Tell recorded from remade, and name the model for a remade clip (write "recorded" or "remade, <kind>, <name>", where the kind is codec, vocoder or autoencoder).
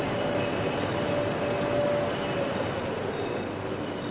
recorded